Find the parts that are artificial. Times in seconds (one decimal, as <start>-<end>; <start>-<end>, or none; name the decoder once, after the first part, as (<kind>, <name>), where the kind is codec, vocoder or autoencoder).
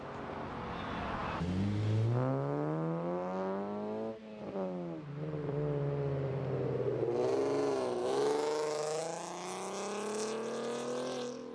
8.0-9.0 (autoencoder, DAC-VAE)